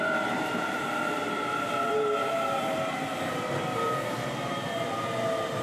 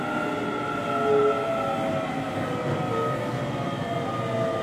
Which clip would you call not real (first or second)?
first